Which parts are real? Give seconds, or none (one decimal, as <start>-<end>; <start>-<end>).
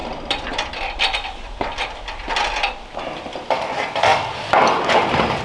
0.0-5.4